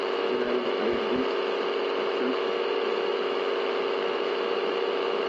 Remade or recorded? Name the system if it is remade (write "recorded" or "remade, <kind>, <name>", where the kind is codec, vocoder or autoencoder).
remade, autoencoder, DAC-VAE